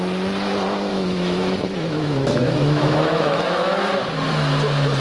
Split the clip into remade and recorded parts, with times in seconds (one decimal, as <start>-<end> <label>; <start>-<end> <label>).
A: 0.0-0.9 recorded; 0.9-3.9 remade; 3.9-5.0 recorded